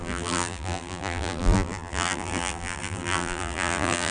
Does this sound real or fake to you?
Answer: fake